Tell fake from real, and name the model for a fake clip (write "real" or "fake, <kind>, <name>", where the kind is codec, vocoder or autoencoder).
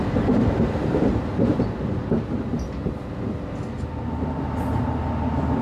real